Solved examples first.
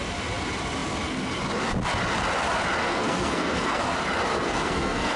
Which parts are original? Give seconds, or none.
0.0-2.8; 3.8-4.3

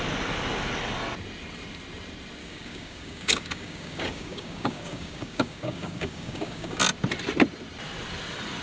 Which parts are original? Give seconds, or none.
0.0-2.4; 6.8-8.6